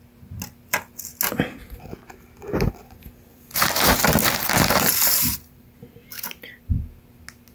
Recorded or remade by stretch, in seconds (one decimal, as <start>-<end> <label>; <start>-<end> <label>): 0.0-3.3 recorded; 3.3-4.2 remade; 4.2-4.9 recorded; 4.9-6.7 remade; 6.7-7.5 recorded